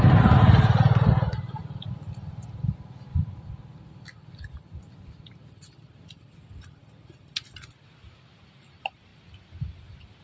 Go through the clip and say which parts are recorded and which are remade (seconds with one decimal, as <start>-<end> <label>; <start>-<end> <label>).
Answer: 0.0-10.2 recorded